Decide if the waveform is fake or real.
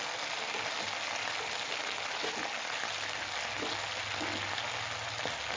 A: real